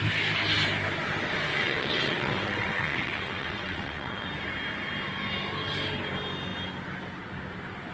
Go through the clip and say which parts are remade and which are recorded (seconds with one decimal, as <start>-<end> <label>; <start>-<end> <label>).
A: 0.0-1.5 recorded; 1.5-4.3 remade; 4.3-7.9 recorded